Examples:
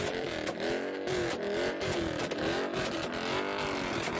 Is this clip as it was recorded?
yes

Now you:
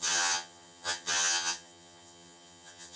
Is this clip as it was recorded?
no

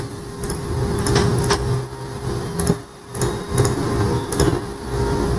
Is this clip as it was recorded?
yes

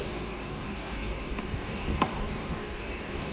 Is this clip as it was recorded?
no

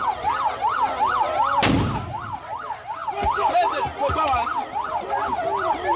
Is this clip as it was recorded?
yes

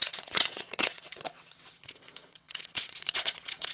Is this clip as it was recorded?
no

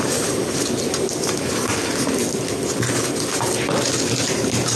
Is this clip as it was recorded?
yes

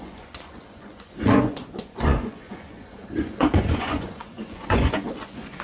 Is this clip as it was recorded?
no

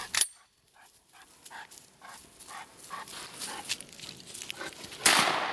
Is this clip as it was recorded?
yes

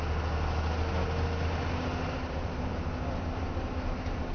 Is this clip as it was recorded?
yes